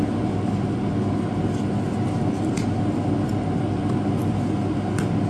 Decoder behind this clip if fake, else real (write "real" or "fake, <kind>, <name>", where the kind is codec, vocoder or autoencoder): real